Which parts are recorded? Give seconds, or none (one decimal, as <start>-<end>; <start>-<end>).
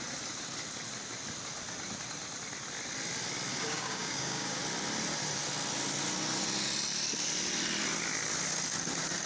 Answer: 0.0-3.5; 4.6-9.3